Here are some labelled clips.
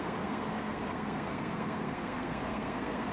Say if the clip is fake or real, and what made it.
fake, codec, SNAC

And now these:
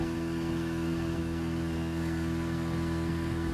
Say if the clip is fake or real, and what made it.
fake, codec, SNAC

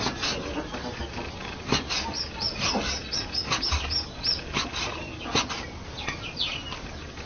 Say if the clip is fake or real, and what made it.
real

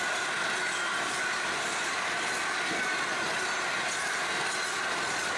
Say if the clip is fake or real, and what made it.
real